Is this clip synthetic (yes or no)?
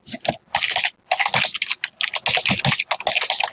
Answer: no